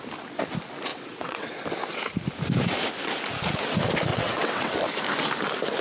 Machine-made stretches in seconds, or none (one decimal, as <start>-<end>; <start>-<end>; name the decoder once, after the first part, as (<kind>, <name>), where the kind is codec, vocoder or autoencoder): 0.9-1.5 (vocoder, WaveNeXt); 4.1-4.7